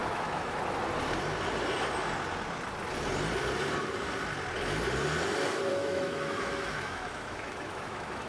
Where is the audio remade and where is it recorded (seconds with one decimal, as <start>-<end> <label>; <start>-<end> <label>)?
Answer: 0.0-0.6 remade; 0.6-5.7 recorded; 5.7-8.3 remade

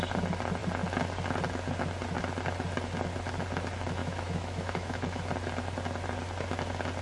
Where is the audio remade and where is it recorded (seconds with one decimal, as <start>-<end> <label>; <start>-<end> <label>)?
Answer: 0.0-4.0 recorded; 4.0-5.2 remade; 5.2-7.0 recorded

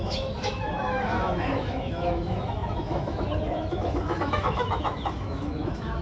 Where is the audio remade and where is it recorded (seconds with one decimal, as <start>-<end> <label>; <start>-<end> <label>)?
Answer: 0.0-6.0 remade

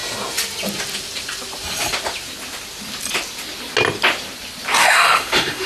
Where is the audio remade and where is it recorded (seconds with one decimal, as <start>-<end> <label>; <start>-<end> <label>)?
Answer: 0.0-4.8 recorded; 4.8-5.7 remade

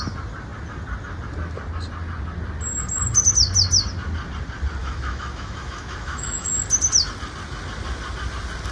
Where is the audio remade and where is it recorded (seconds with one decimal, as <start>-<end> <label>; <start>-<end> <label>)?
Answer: 0.0-4.8 recorded; 4.8-6.5 remade; 6.5-8.7 recorded

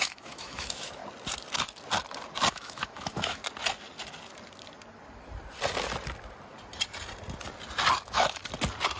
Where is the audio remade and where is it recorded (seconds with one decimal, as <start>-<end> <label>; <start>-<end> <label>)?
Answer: 0.0-1.0 remade; 1.0-2.5 recorded; 2.5-3.4 remade; 3.4-8.0 recorded; 8.0-8.4 remade; 8.4-9.0 recorded

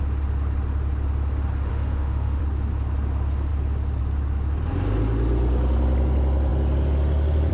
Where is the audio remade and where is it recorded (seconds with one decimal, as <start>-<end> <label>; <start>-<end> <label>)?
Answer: 0.0-1.7 recorded; 1.7-2.4 remade; 2.4-7.5 recorded